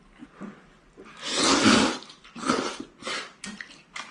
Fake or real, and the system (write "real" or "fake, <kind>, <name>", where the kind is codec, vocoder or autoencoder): real